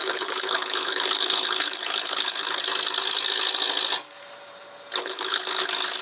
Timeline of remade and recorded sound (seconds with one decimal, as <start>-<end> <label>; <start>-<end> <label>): 0.0-2.6 remade; 2.6-5.0 recorded; 5.0-5.6 remade; 5.6-6.0 recorded